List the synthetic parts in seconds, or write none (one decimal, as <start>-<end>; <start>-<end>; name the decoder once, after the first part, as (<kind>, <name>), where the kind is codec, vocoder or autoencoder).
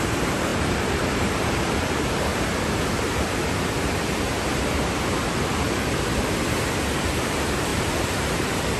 0.0-2.3 (vocoder, BigVGAN v2); 3.8-5.2; 7.0-8.8